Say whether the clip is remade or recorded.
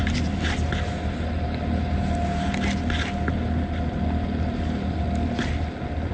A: recorded